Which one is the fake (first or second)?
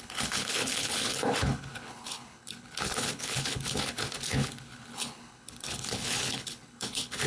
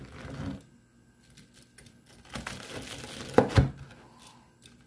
first